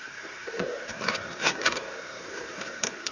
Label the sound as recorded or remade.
remade